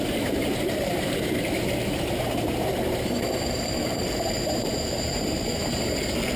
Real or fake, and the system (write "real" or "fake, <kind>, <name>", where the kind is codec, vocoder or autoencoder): fake, vocoder, BigVGAN v2